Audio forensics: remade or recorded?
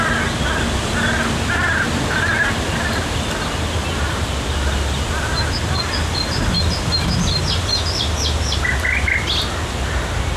recorded